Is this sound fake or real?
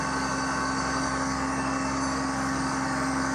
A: fake